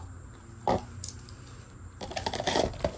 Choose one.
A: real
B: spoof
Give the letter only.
A